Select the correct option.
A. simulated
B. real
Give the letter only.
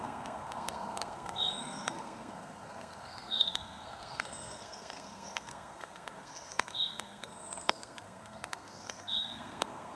A